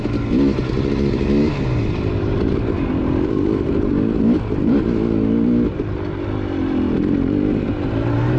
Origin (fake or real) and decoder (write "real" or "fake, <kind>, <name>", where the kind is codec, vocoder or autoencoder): real